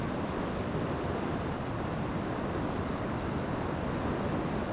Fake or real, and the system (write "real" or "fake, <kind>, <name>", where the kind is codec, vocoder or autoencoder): fake, vocoder, BigVGAN v2